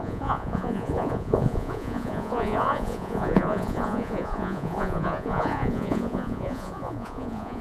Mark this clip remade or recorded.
remade